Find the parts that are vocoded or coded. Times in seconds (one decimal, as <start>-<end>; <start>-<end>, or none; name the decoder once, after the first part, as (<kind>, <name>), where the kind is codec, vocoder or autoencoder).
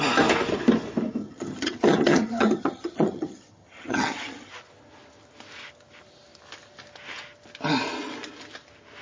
1.2-4.5 (vocoder, HiFi-GAN)